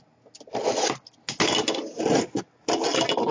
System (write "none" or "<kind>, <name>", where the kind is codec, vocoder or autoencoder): none